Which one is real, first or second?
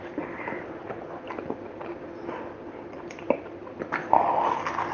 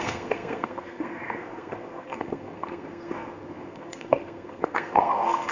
first